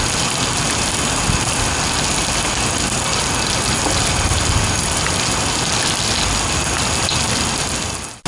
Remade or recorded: recorded